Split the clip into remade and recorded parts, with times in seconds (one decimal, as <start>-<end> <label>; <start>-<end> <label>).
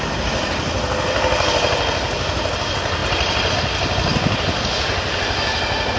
0.0-3.0 recorded; 3.0-3.5 remade; 3.5-6.0 recorded